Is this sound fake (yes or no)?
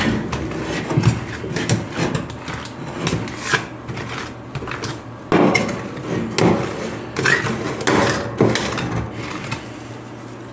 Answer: no